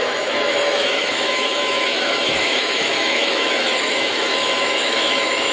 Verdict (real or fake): fake